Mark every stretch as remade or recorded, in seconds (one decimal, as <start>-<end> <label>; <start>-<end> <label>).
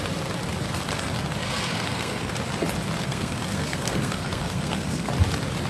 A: 0.0-1.4 recorded; 1.4-2.3 remade; 2.3-3.0 recorded; 3.0-5.1 remade; 5.1-5.7 recorded